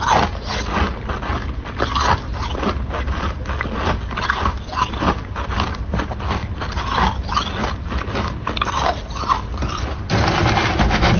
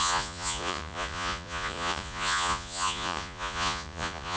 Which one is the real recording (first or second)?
first